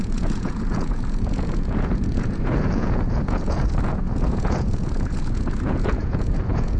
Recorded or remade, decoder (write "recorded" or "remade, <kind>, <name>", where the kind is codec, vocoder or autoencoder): remade, vocoder, Vocos